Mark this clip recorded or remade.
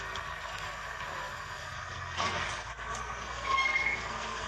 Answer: remade